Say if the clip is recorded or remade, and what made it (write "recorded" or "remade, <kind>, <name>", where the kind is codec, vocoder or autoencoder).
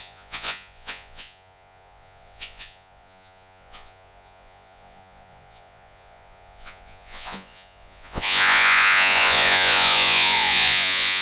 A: remade, vocoder, Vocos